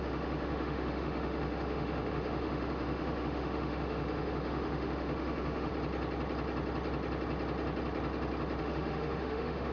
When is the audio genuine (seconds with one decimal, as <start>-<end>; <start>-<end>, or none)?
5.7-8.6